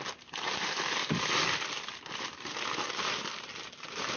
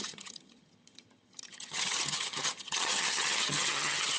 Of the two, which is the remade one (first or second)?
second